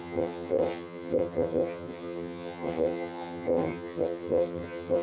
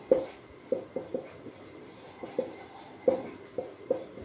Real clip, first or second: second